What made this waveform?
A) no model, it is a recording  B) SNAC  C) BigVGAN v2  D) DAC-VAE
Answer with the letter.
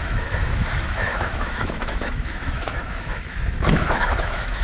D